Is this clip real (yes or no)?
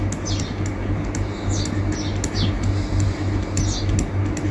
yes